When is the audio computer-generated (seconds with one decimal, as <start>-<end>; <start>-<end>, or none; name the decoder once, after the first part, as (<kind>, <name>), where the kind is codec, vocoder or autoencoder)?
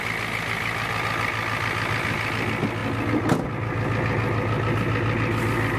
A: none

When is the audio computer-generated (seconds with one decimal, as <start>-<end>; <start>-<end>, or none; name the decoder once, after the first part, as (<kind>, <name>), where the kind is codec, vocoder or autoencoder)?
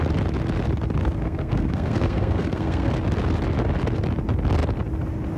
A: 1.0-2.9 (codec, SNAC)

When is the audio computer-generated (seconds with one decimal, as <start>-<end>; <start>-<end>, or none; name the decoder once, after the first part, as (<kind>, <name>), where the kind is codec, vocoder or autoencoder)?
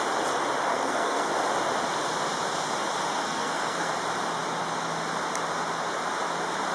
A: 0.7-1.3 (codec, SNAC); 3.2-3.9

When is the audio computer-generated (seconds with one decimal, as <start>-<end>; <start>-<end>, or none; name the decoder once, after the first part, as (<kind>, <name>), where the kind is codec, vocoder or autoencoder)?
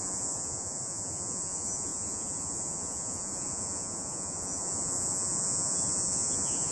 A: 0.0-6.7 (vocoder, Vocos)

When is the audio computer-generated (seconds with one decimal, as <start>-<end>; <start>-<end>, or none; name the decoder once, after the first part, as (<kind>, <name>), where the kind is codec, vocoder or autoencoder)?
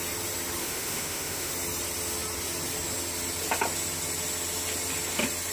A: 0.6-1.5 (autoencoder, DAC-VAE)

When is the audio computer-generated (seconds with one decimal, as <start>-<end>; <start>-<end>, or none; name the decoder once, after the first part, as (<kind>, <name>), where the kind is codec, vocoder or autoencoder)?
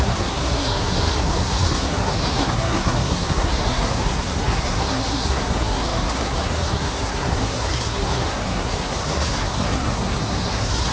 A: 0.0-10.9 (codec, SNAC)